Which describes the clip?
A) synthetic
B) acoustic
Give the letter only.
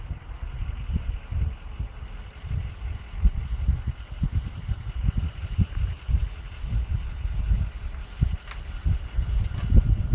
B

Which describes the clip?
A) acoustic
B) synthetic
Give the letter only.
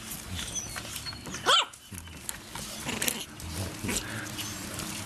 A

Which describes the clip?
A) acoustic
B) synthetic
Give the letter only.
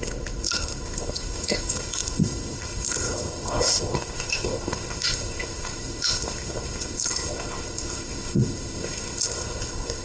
B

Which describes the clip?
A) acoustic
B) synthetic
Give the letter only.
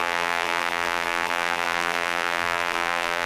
B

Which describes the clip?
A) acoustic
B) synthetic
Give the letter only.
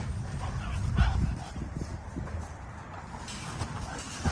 A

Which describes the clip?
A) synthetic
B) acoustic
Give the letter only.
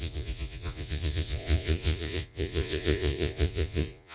A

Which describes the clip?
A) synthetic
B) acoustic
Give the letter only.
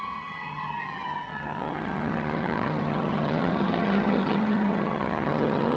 A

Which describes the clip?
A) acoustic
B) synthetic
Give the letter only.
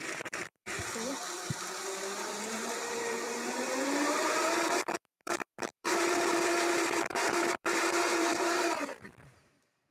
B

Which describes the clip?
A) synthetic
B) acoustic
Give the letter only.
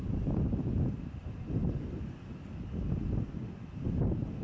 B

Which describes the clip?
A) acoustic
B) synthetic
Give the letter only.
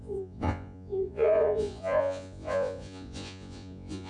B